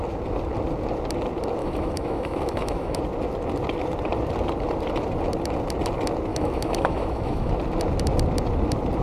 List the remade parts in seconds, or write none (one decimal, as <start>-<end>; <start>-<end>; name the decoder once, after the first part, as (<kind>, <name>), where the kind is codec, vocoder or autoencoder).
1.6-3.0 (autoencoder, DAC-VAE); 6.3-7.5